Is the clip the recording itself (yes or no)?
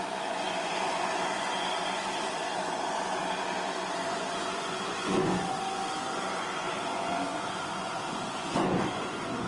no